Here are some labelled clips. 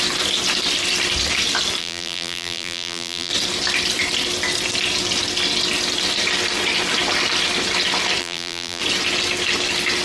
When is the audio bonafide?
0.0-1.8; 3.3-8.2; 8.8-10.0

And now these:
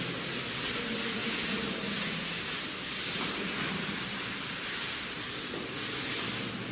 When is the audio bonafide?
0.0-1.2; 5.2-6.7

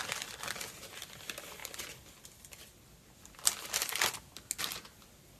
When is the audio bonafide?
0.0-5.4

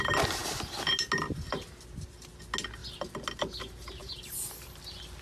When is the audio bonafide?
0.0-5.2